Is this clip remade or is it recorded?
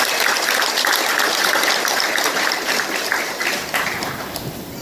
remade